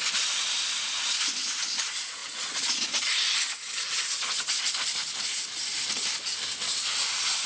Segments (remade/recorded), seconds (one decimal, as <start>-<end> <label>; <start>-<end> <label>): 0.0-2.2 recorded; 2.2-3.4 remade; 3.4-7.5 recorded